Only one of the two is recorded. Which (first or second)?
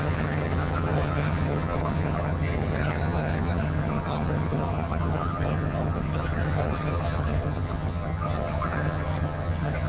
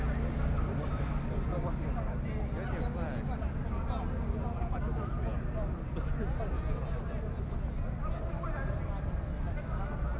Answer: second